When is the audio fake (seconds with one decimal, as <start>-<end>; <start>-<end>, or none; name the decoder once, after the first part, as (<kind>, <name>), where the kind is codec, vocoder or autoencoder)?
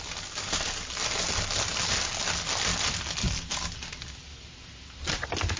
none